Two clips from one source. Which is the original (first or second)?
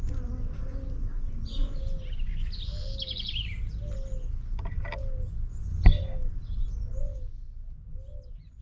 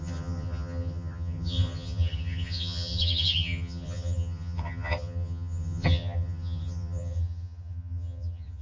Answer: first